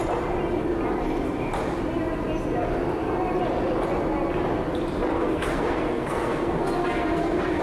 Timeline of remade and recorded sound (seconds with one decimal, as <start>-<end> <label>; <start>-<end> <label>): 0.0-5.1 recorded; 5.1-7.6 remade